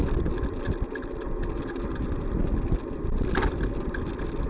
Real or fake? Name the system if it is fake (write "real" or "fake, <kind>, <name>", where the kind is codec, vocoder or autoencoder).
real